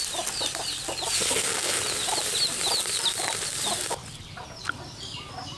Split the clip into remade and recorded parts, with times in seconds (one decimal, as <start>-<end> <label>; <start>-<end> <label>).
0.0-5.6 recorded